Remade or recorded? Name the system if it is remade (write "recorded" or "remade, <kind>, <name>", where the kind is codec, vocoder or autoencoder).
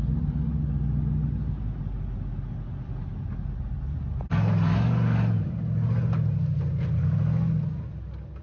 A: recorded